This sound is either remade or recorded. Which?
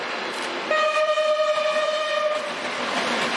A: remade